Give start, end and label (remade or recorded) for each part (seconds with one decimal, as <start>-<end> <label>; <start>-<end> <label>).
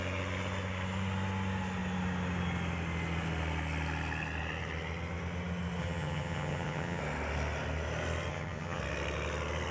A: 0.0-5.8 recorded; 5.8-7.0 remade; 7.0-8.3 recorded; 8.3-8.8 remade; 8.8-9.7 recorded